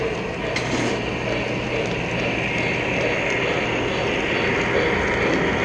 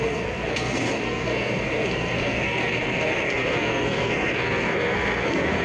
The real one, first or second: first